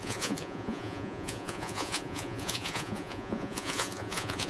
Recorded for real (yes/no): no